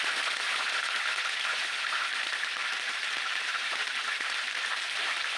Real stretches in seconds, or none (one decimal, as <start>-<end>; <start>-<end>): 0.0-2.6